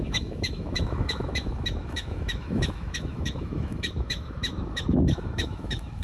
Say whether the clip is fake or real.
fake